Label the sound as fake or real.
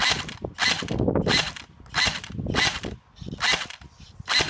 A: real